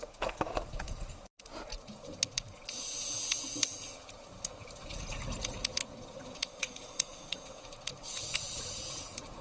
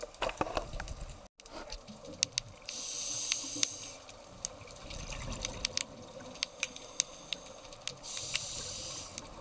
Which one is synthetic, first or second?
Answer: first